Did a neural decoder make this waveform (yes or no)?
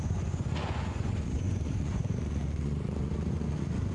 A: yes